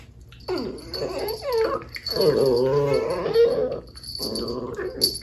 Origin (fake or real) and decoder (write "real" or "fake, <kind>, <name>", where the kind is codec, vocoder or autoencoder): real